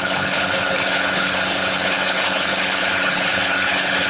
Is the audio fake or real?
fake